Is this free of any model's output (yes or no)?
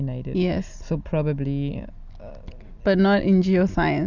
yes